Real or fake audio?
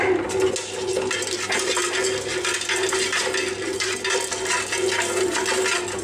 real